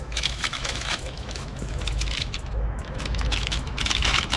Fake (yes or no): yes